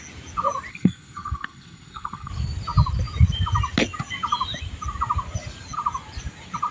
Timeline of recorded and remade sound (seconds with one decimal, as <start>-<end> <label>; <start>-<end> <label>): 0.0-0.7 recorded; 0.7-2.3 remade; 2.3-6.7 recorded